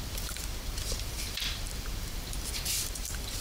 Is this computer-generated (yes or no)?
yes